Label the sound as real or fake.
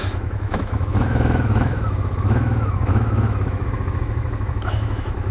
fake